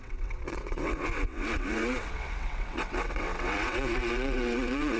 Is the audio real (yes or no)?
no